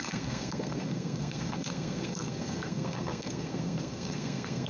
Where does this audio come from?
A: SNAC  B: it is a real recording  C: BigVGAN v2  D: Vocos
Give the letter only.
A